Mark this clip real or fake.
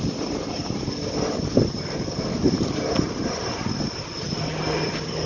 real